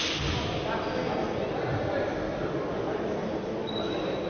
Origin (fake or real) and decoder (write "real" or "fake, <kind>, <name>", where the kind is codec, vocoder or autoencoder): real